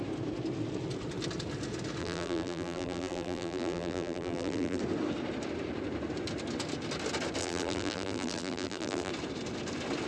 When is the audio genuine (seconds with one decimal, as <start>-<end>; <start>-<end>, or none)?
0.0-2.0; 4.8-7.4; 9.1-10.1